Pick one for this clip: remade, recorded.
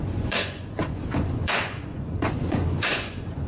remade